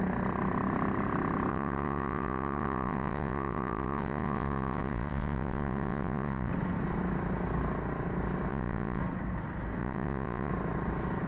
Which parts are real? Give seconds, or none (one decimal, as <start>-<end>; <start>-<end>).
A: 0.0-1.5; 6.5-8.5; 9.0-9.8; 10.5-11.3